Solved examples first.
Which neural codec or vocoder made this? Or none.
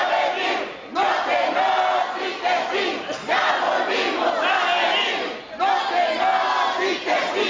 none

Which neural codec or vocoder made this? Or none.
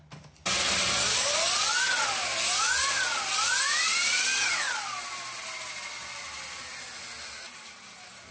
none